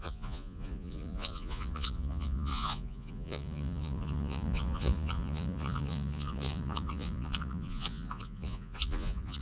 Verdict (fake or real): fake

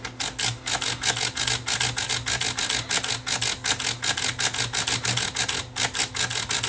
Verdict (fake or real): real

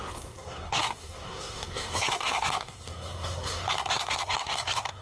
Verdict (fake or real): fake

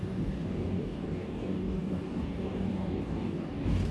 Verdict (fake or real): fake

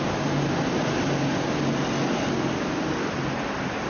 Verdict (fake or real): real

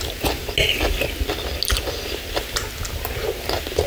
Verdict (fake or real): real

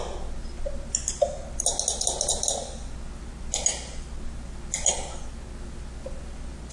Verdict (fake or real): real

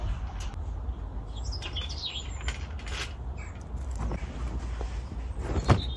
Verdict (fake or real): real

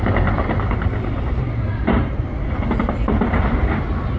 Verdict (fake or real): real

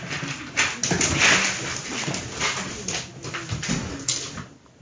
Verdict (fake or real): real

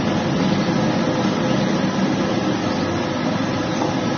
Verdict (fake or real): real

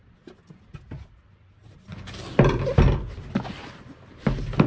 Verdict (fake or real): real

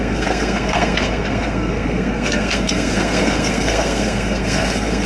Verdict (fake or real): fake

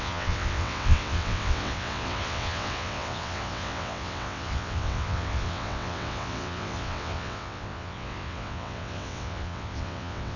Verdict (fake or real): fake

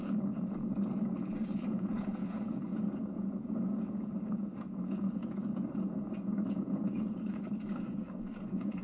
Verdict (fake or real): fake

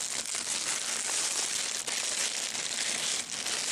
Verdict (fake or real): real